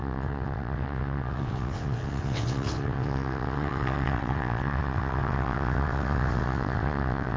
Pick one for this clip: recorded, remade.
remade